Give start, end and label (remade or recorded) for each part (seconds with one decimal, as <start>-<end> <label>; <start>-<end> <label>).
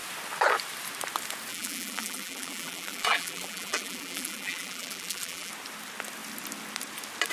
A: 0.0-1.5 recorded; 1.5-5.5 remade; 5.5-7.3 recorded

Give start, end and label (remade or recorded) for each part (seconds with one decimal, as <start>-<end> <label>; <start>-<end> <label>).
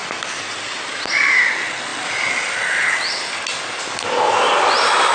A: 0.0-1.2 remade; 1.2-5.1 recorded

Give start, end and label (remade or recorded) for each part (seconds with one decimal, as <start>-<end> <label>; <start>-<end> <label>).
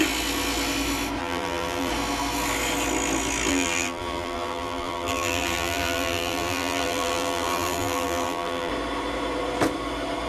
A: 0.0-1.2 recorded; 1.2-1.9 remade; 1.9-3.5 recorded; 3.5-8.7 remade; 8.7-10.3 recorded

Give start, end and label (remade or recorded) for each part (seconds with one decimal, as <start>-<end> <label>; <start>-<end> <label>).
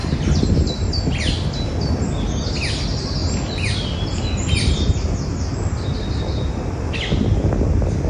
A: 0.0-0.9 remade; 0.9-3.2 recorded; 3.2-4.9 remade; 4.9-8.1 recorded